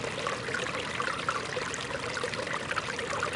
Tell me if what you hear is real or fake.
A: real